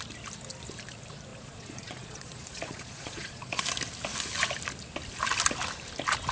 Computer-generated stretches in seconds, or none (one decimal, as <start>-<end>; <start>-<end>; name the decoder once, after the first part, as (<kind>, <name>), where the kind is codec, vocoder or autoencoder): 1.3-3.6 (vocoder, Vocos)